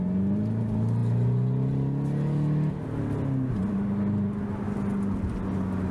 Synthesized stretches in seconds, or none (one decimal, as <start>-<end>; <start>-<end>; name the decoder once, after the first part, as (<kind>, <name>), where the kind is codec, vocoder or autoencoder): none